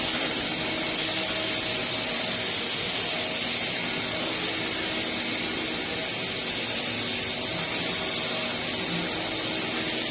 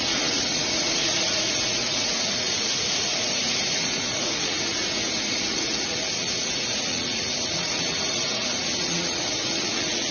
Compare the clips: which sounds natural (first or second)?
first